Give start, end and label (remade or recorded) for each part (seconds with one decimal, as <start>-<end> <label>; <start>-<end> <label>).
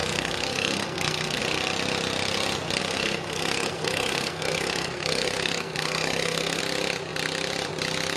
0.0-1.4 remade; 1.4-2.8 recorded; 2.8-6.6 remade; 6.6-8.2 recorded